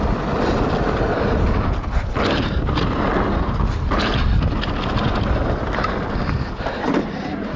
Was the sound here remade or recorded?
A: recorded